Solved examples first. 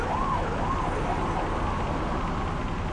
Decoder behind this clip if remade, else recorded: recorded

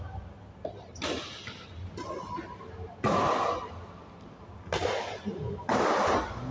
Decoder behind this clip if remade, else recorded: recorded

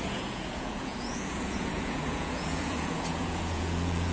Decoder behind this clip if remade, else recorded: remade, vocoder, Vocos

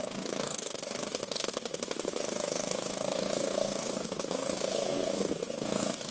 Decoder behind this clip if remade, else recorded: remade, codec, DAC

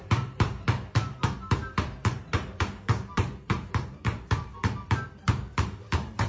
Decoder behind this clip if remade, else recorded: remade, vocoder, BigVGAN v2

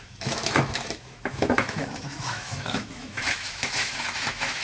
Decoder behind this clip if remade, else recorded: remade, autoencoder, DAC-VAE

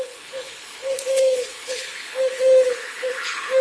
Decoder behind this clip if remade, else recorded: remade, codec, HILCodec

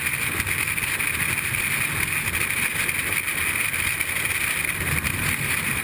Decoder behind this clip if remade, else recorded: recorded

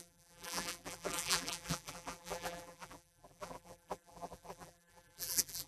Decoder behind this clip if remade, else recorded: remade, vocoder, BigVGAN v2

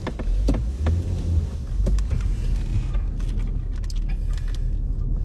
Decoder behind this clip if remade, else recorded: recorded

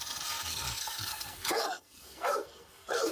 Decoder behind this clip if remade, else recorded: remade, codec, SNAC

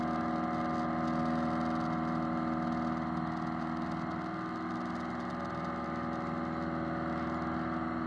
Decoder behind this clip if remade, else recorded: recorded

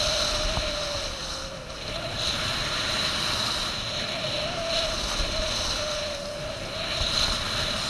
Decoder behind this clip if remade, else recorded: recorded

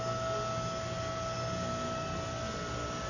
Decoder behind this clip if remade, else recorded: recorded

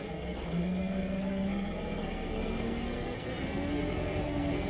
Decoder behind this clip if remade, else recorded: remade, codec, SNAC